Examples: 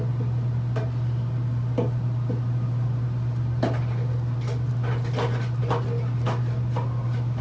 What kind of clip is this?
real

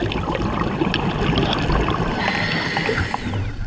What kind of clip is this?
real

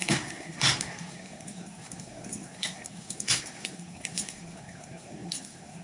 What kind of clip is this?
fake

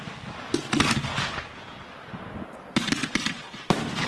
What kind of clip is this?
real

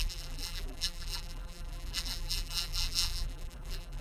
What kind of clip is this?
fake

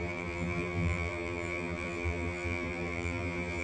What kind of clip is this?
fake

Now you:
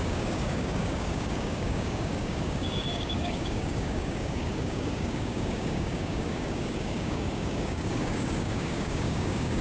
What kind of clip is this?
fake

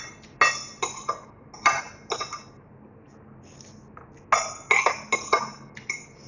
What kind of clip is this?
real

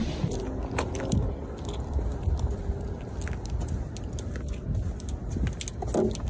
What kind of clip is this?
real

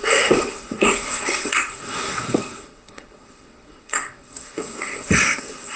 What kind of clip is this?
fake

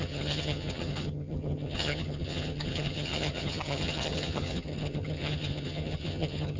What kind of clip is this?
fake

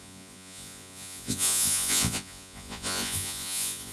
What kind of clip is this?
fake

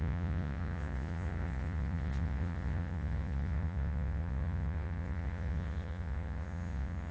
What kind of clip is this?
fake